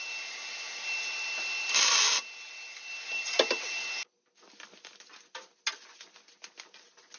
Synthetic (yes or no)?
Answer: no